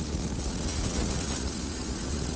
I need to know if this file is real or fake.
fake